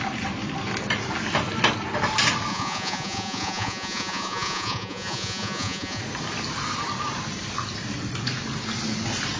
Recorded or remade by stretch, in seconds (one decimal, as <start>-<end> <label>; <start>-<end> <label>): 0.0-2.5 recorded; 2.5-6.0 remade; 6.0-9.4 recorded